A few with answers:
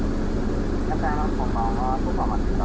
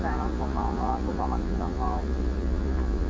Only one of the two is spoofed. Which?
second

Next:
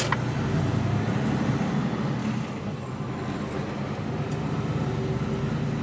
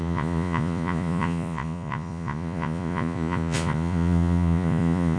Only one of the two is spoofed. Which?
second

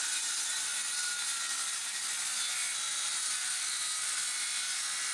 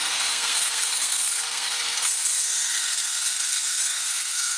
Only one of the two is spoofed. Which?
second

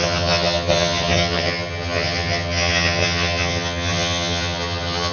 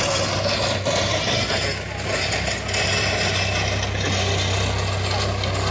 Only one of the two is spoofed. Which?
first